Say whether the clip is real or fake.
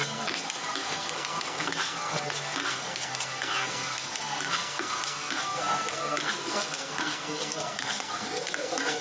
fake